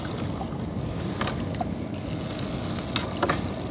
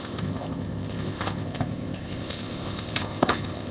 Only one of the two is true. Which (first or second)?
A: first